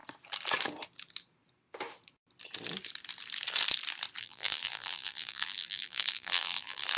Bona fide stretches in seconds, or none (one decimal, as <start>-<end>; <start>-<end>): 0.0-4.2